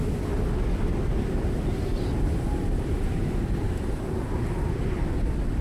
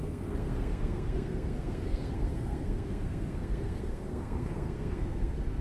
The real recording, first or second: first